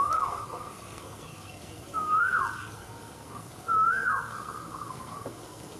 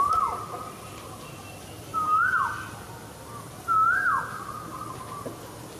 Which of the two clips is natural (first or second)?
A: second